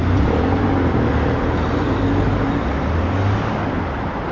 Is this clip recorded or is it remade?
recorded